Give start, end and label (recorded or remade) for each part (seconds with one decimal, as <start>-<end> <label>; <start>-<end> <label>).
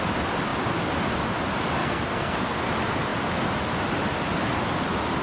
0.0-1.8 recorded; 1.8-2.7 remade; 2.7-5.2 recorded